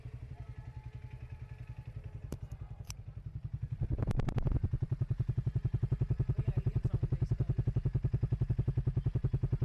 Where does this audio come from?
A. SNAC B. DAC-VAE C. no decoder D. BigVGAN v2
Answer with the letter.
D